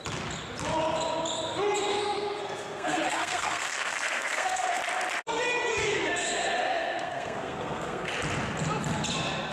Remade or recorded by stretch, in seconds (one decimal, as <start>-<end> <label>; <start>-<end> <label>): 0.0-1.9 recorded; 1.9-4.8 remade; 4.8-5.7 recorded; 5.7-8.1 remade; 8.1-9.5 recorded